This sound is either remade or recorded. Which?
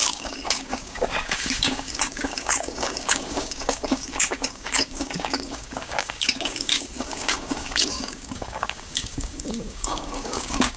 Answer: remade